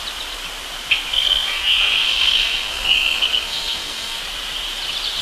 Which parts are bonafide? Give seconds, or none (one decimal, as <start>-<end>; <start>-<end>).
0.0-1.1; 4.2-5.2